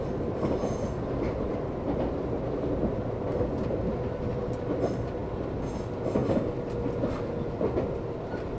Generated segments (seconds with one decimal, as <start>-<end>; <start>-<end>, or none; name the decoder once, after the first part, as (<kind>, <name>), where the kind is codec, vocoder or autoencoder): none